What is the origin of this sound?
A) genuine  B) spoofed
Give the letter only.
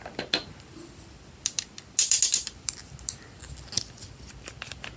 A